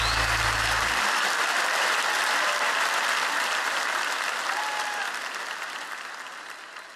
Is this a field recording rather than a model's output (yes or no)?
yes